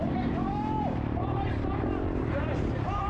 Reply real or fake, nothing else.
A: fake